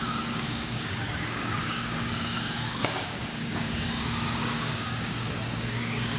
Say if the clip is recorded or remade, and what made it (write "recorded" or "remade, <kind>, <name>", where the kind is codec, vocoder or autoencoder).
remade, codec, DAC